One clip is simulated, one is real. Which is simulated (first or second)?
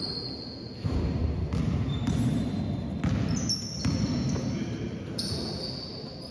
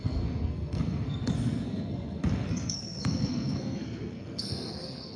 second